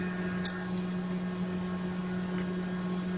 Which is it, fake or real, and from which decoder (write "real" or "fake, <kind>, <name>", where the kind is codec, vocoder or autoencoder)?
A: real